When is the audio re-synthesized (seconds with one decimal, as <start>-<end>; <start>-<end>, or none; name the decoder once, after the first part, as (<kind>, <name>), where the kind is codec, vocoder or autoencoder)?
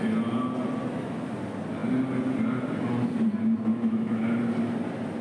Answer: 3.7-4.4 (autoencoder, DAC-VAE)